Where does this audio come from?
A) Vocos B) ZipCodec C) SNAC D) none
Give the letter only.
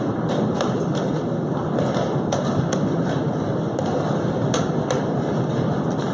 D